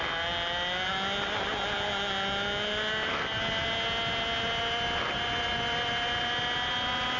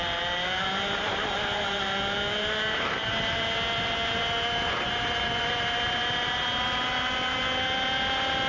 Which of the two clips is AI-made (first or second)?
second